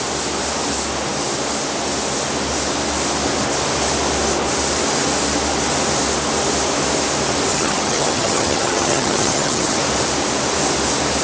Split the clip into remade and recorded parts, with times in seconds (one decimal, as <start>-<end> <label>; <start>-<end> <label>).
0.0-7.5 recorded; 7.5-9.8 remade; 9.8-11.2 recorded